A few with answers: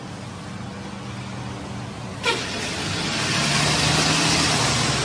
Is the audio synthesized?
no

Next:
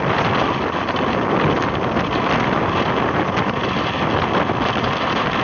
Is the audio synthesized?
no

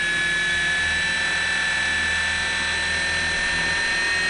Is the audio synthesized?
no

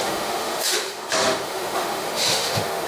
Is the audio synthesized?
yes